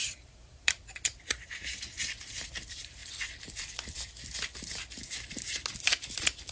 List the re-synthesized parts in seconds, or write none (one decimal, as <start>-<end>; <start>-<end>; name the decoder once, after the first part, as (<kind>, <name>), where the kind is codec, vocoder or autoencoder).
0.0-3.0 (vocoder, BigVGAN v2)